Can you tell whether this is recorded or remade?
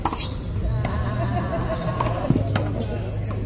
recorded